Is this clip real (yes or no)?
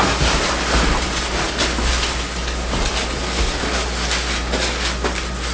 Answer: yes